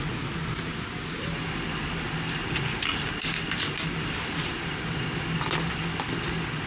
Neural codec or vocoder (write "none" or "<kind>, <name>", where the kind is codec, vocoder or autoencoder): none